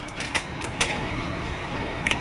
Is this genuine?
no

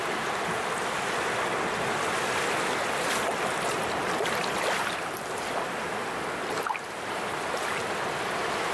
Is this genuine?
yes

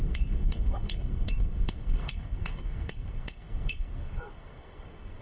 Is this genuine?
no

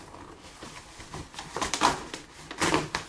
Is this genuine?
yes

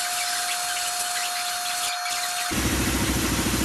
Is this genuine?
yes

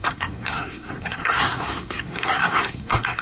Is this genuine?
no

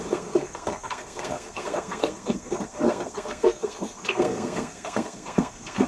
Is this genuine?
no